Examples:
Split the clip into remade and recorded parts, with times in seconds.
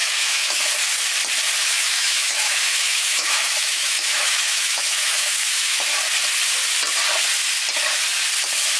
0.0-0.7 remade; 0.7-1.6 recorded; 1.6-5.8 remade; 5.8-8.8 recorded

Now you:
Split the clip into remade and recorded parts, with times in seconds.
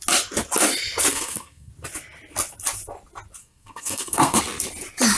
0.0-1.1 recorded; 1.1-1.7 remade; 1.7-3.4 recorded; 3.4-4.4 remade; 4.4-5.2 recorded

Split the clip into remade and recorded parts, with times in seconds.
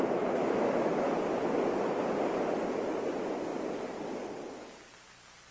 0.0-0.4 recorded; 0.4-1.0 remade; 1.0-5.5 recorded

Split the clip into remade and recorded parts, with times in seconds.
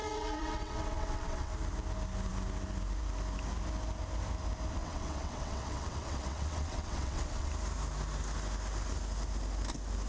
0.0-1.5 remade; 1.5-4.8 recorded; 4.8-7.5 remade; 7.5-10.1 recorded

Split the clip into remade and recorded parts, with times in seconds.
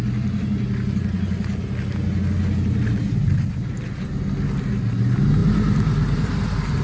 0.0-5.4 recorded; 5.4-6.3 remade; 6.3-6.8 recorded